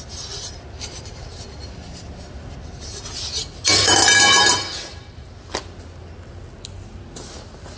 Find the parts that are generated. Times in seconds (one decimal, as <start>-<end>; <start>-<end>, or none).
none